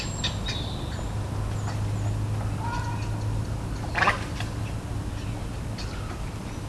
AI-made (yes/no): no